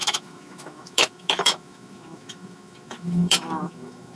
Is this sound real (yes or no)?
no